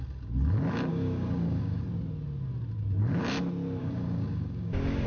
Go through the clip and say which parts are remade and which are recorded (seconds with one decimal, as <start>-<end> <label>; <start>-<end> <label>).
0.0-0.9 recorded; 0.9-1.8 remade; 1.8-3.8 recorded; 3.8-5.1 remade